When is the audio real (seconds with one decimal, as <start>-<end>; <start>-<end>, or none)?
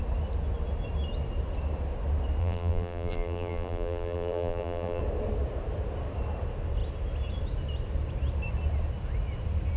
0.0-2.4; 5.0-9.8